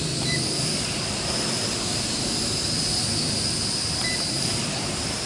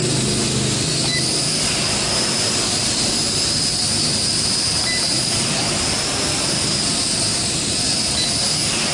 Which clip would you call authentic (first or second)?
second